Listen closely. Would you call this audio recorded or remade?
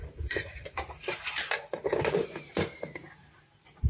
remade